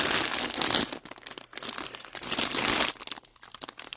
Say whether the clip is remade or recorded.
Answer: recorded